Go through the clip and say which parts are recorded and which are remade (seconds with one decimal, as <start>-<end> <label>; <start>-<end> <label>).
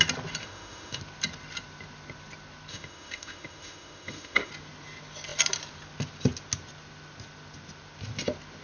0.0-0.4 recorded; 0.4-1.0 remade; 1.0-2.7 recorded; 2.7-4.5 remade; 4.5-8.6 recorded